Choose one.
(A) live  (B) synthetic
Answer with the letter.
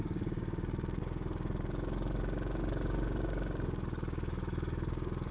B